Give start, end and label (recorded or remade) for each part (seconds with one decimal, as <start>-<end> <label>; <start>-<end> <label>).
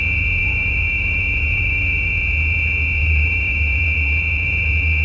0.0-0.4 recorded; 0.4-2.1 remade; 2.1-3.0 recorded; 3.0-3.8 remade; 3.8-5.0 recorded